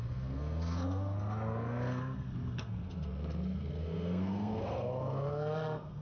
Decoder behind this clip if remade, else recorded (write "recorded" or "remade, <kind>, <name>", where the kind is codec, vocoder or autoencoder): remade, codec, SNAC